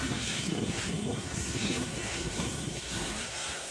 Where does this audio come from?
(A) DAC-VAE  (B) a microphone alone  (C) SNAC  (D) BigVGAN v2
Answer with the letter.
C